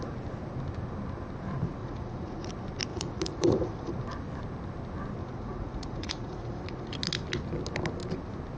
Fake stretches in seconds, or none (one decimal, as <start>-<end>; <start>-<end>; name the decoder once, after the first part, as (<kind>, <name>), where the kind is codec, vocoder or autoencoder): 1.8-2.5 (vocoder, Vocos); 2.9-3.9; 5.2-6.9